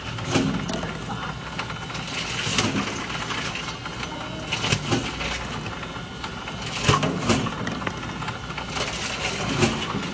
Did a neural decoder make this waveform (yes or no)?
no